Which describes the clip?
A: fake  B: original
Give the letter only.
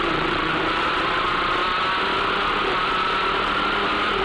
B